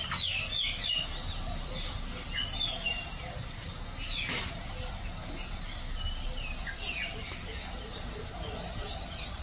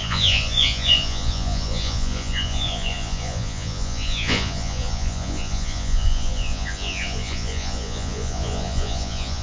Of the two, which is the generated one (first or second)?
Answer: second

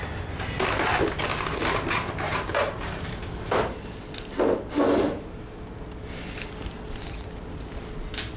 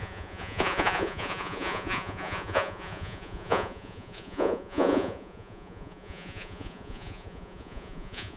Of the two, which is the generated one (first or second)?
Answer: second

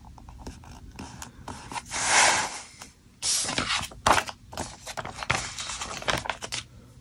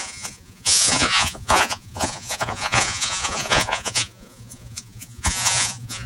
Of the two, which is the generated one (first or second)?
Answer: second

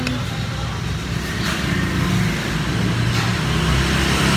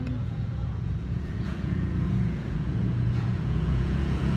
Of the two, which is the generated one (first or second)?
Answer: second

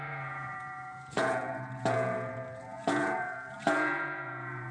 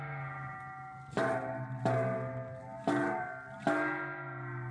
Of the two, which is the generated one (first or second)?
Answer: first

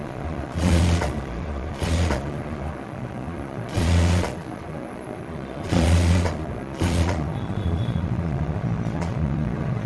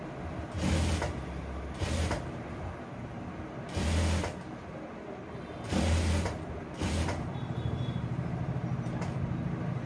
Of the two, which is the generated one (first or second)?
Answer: first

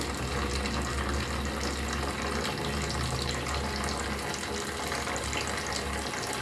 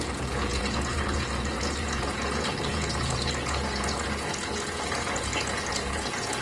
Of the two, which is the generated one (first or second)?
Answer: second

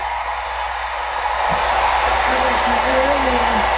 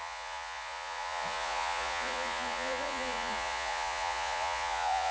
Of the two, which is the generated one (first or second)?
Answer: second